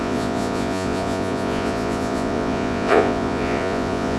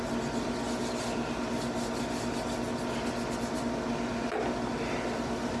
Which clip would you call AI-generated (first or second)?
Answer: first